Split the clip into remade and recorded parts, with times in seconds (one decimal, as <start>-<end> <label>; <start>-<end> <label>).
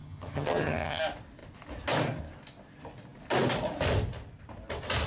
0.0-1.0 remade; 1.0-5.1 recorded